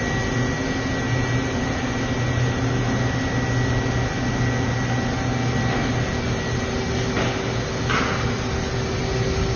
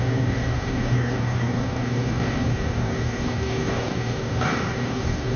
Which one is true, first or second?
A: first